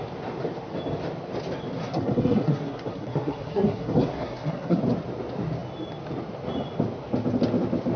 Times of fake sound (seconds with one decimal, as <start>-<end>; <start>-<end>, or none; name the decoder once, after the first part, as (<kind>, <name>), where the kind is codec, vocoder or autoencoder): 1.8-4.8 (codec, SNAC)